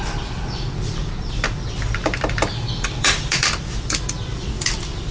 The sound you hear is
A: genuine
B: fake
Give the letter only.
B